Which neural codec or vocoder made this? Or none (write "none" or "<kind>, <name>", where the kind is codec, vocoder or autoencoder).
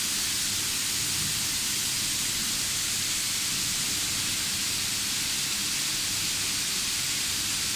none